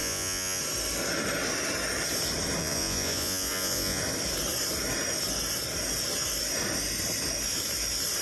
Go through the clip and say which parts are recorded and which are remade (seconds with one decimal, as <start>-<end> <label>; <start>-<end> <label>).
0.0-0.6 remade; 0.6-2.6 recorded; 2.6-4.0 remade; 4.0-8.2 recorded